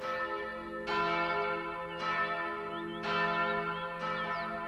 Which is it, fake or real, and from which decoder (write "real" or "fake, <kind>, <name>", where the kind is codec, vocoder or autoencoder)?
real